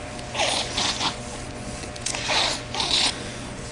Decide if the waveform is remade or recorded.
remade